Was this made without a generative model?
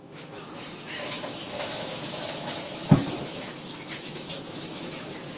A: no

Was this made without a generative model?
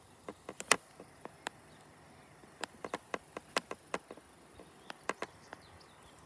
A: yes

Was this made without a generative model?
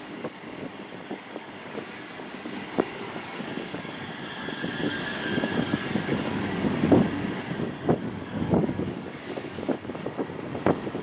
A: no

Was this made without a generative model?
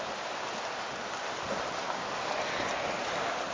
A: yes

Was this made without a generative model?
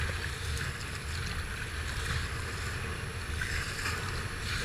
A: yes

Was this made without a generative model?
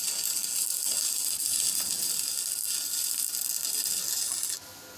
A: yes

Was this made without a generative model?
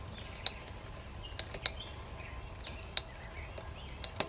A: yes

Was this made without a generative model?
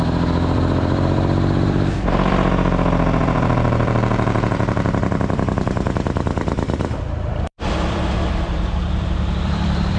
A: no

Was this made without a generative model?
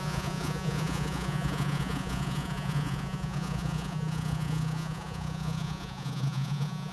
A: no